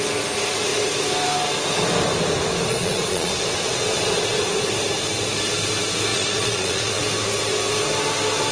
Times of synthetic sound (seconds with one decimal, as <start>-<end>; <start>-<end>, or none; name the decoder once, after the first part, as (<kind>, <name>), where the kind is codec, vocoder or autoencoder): 2.7-3.3 (vocoder, Vocos); 6.1-7.0